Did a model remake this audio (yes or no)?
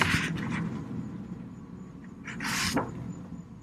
yes